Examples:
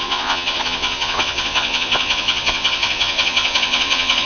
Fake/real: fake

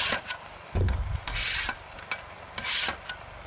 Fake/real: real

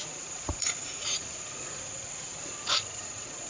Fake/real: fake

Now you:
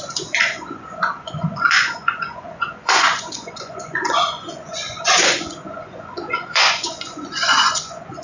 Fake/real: fake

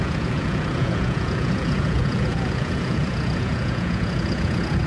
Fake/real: fake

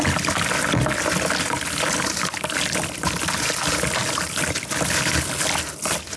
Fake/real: real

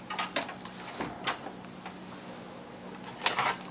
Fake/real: real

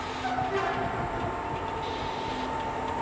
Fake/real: real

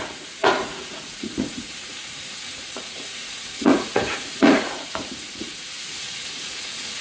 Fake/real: fake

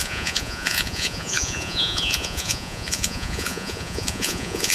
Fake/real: fake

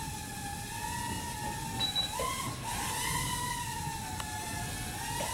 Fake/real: real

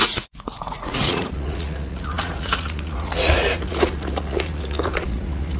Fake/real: fake